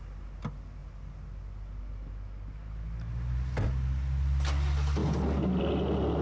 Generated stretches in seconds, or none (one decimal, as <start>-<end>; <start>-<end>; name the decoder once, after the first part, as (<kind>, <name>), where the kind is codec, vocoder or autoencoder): none